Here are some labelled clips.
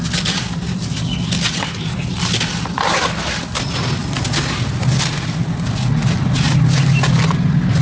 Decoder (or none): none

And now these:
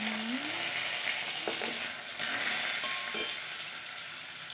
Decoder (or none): none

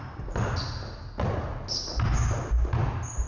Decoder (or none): none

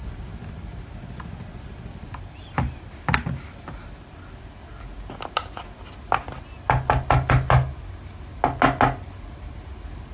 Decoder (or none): none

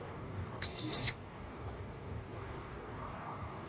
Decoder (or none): codec, DAC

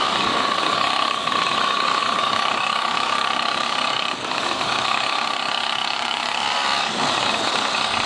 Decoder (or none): codec, DAC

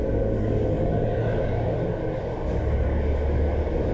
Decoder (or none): codec, DAC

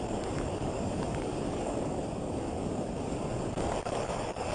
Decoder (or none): codec, DAC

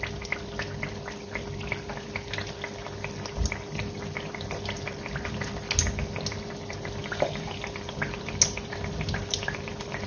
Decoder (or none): none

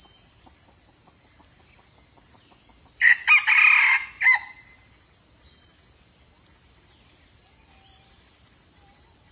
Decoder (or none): none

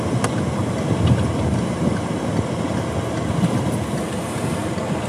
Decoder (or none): none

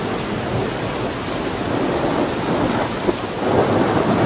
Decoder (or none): none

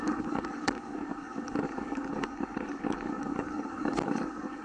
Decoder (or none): codec, DAC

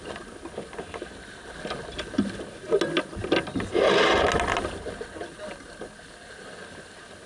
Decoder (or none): none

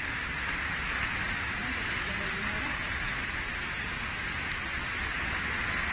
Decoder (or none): none